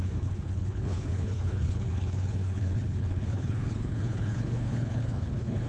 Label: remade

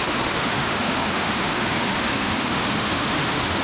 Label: remade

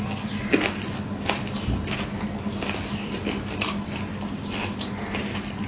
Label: recorded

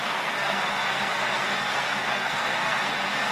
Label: remade